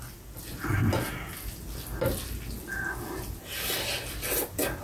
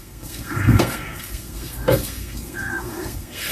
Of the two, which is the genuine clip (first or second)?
first